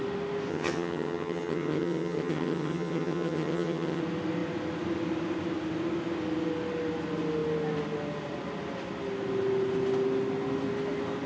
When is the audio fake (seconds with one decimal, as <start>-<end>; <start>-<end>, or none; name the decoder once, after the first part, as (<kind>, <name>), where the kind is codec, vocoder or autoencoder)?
0.5-4.0 (vocoder, HiFi-GAN)